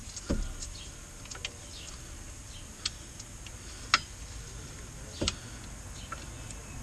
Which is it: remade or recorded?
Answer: recorded